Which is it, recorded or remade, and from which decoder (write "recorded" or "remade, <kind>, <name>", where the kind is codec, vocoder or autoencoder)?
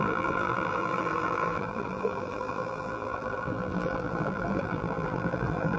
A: remade, vocoder, BigVGAN v2